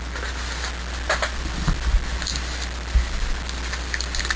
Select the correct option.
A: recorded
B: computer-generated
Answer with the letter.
A